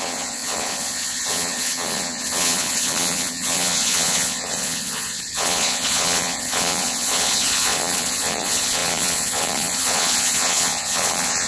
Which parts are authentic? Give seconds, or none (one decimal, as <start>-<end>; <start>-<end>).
none